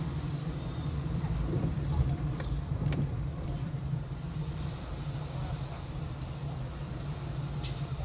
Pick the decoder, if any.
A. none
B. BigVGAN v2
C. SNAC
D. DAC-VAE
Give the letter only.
B